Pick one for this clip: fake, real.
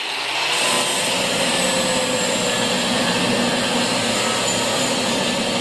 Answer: real